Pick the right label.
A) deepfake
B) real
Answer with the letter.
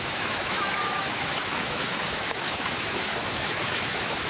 A